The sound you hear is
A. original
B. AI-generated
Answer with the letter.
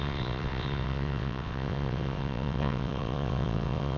B